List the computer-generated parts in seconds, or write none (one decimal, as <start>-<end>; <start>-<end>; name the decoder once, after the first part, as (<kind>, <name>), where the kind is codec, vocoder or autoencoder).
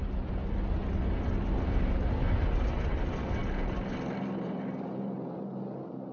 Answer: none